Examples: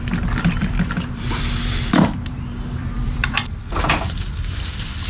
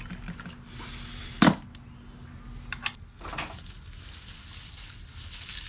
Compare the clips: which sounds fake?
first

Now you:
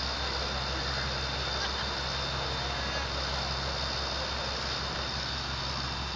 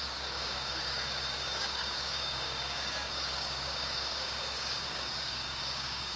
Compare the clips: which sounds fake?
second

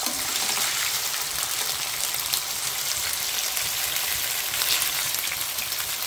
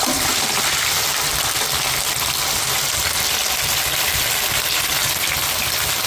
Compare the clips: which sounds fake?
first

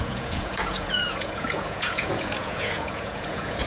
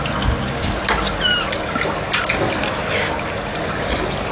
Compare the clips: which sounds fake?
first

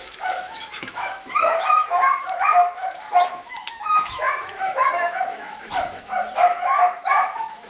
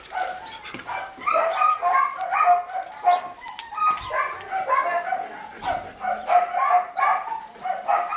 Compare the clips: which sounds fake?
first